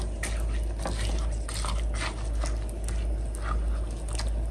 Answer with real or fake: real